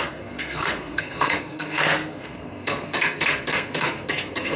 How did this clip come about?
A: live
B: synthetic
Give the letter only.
B